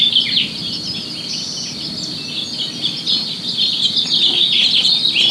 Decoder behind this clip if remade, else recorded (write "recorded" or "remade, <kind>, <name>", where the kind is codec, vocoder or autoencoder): recorded